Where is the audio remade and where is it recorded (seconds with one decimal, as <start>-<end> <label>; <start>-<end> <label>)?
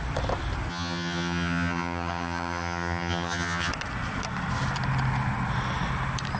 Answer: 0.0-0.7 recorded; 0.7-3.7 remade; 3.7-6.4 recorded